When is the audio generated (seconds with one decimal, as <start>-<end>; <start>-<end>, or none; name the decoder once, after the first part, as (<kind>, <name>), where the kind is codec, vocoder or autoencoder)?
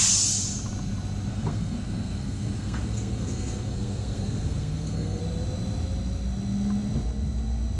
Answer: 1.3-5.2 (codec, SNAC)